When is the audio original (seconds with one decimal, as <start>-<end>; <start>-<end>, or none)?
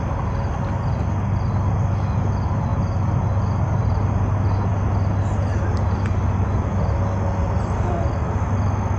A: 0.0-9.0